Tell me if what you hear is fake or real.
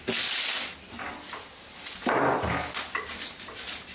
real